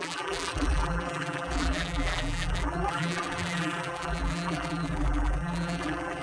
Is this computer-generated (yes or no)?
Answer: yes